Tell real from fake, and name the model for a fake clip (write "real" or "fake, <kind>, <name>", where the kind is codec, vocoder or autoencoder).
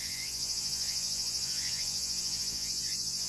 fake, vocoder, Vocos